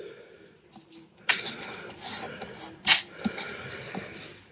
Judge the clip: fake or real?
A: real